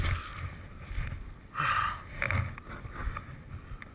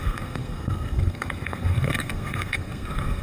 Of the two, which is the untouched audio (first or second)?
first